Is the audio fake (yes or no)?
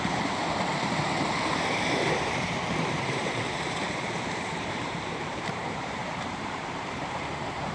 yes